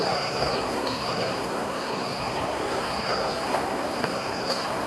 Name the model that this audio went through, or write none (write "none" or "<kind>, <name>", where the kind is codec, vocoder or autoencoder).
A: codec, SNAC